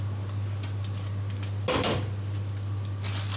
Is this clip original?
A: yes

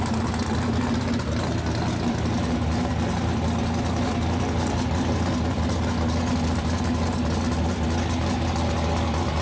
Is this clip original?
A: yes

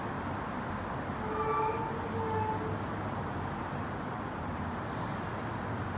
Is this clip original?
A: yes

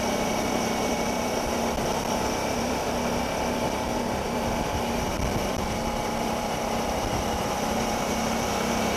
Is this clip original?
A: no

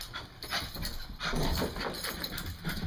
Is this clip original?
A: no